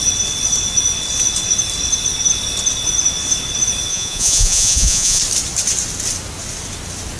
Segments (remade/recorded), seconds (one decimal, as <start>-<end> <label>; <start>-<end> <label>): 0.0-3.9 recorded; 3.9-5.2 remade; 5.2-7.2 recorded